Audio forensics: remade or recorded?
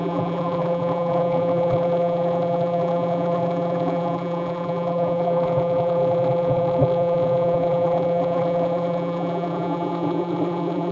remade